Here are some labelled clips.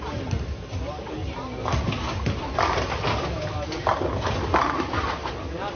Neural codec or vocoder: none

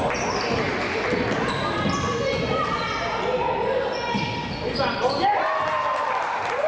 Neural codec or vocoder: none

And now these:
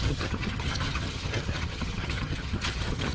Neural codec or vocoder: vocoder, HiFi-GAN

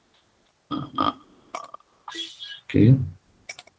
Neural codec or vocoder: none